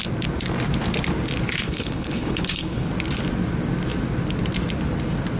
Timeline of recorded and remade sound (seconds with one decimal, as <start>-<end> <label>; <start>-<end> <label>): 0.0-1.6 recorded; 1.6-2.9 remade; 2.9-5.4 recorded